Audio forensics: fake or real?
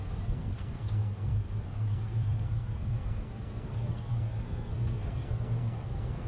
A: fake